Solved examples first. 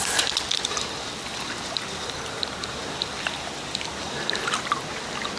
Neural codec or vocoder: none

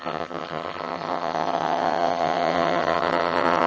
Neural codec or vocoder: vocoder, HiFi-GAN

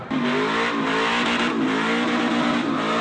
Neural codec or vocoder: none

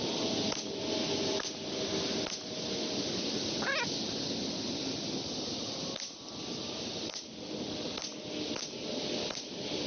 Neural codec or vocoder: none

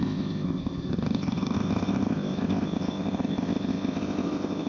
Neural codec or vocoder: codec, ZipCodec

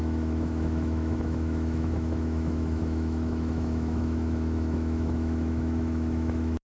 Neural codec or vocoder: autoencoder, DAC-VAE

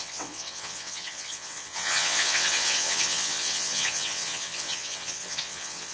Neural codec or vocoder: vocoder, WaveNeXt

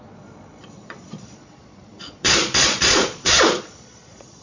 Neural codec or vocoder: vocoder, Vocos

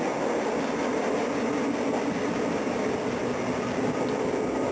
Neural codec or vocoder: none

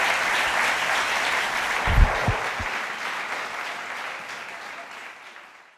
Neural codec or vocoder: none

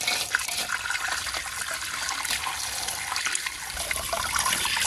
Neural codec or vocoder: none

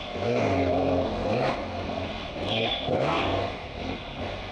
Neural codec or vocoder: codec, SNAC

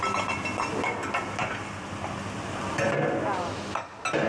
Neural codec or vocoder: none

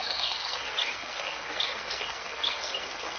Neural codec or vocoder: codec, SNAC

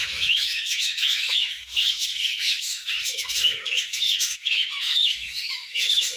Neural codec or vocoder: autoencoder, DAC-VAE